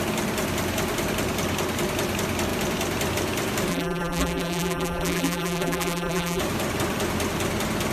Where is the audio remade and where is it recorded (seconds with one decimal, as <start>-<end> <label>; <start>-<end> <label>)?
0.0-3.7 recorded; 3.7-6.4 remade; 6.4-7.9 recorded